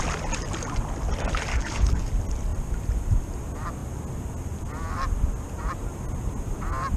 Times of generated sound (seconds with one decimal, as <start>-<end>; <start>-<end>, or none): 1.5-2.1